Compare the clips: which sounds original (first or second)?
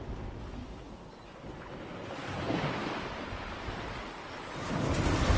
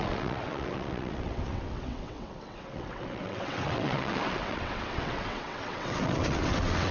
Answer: first